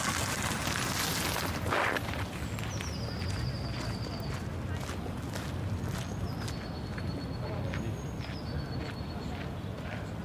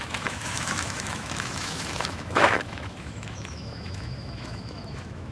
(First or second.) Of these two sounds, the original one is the first